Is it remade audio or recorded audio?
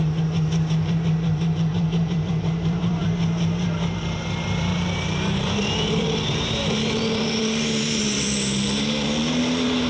remade